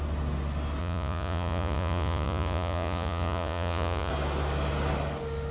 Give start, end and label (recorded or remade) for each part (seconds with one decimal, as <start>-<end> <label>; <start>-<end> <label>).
0.0-0.8 recorded; 0.8-4.1 remade; 4.1-5.5 recorded